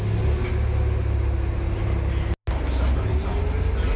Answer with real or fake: real